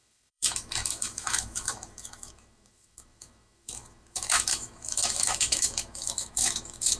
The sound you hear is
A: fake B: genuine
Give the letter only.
A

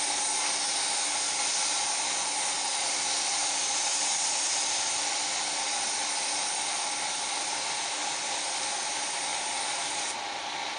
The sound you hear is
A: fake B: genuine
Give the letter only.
B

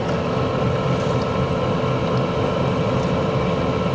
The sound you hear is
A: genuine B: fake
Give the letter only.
A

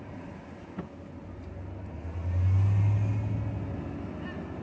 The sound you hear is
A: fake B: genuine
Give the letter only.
B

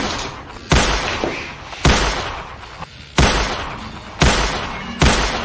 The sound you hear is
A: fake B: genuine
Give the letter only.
B